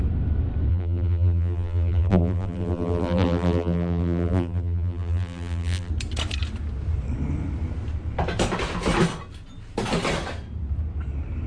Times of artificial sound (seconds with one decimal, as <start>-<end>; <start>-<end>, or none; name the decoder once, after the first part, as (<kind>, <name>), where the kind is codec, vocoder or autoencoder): 0.7-5.9 (vocoder, BigVGAN v2)